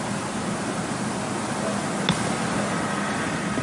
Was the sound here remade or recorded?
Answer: recorded